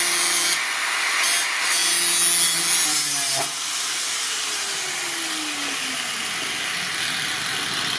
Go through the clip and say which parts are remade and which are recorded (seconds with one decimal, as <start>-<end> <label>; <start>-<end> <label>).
0.0-8.0 recorded

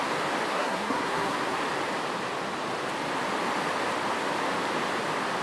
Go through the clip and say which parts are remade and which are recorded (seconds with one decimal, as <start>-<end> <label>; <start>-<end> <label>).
0.0-0.5 recorded; 0.5-1.6 remade; 1.6-5.4 recorded

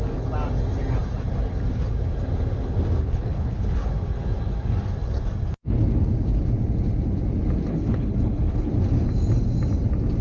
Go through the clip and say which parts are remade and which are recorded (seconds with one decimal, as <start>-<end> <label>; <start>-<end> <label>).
0.0-3.0 recorded; 3.0-3.6 remade; 3.6-7.7 recorded; 7.7-8.7 remade; 8.7-10.2 recorded

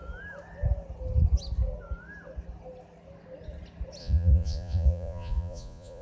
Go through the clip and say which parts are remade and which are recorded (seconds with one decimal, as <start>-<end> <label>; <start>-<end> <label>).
0.0-4.0 recorded; 4.0-6.0 remade

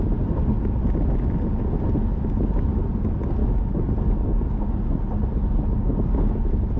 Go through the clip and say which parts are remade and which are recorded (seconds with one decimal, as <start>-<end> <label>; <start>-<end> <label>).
0.0-6.8 recorded